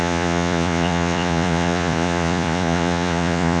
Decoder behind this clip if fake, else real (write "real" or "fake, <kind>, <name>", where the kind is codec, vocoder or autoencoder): fake, vocoder, Vocos